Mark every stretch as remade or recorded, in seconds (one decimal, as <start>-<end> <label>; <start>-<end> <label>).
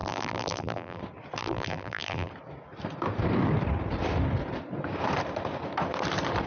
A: 0.0-1.0 remade; 1.0-1.4 recorded; 1.4-2.3 remade; 2.3-6.5 recorded